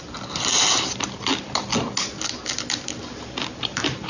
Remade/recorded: recorded